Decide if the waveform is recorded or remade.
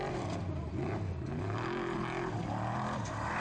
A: recorded